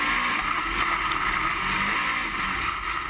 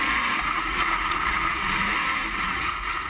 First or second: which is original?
first